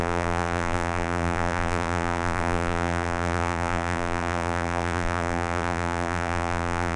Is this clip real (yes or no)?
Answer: no